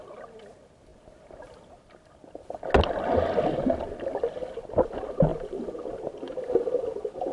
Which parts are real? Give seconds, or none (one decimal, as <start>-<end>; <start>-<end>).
0.0-7.3